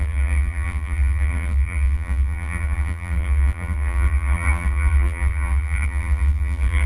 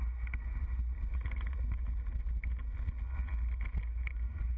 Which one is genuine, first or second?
second